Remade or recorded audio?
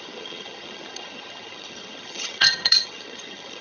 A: remade